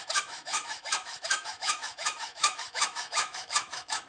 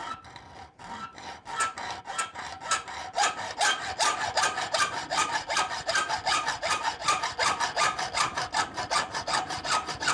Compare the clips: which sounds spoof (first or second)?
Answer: first